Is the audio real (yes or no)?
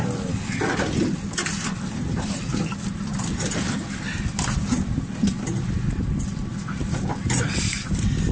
yes